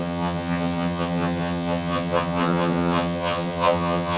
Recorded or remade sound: remade